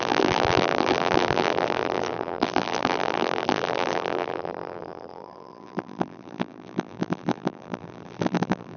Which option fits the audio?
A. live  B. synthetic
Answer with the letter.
B